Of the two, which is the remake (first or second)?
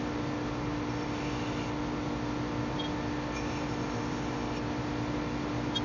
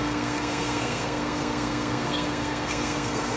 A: second